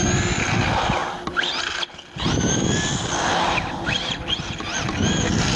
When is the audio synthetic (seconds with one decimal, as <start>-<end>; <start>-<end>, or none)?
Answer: none